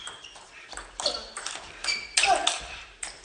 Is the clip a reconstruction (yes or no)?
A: yes